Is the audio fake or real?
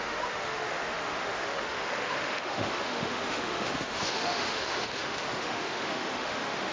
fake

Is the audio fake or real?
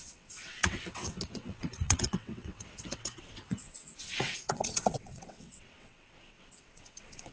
fake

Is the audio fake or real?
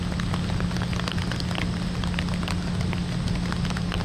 real